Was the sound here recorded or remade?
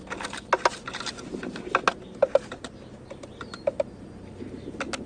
recorded